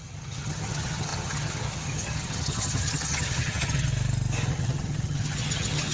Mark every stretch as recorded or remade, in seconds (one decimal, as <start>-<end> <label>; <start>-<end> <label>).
0.0-3.9 remade; 3.9-4.5 recorded; 4.5-5.9 remade